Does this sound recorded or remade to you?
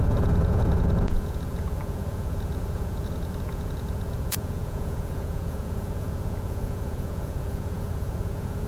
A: remade